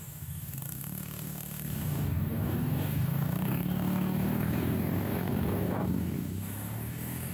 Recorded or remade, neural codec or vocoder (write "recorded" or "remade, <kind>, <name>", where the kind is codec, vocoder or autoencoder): remade, codec, DAC